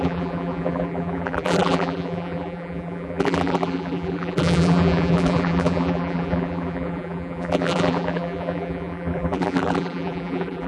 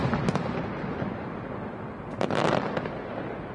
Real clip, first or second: second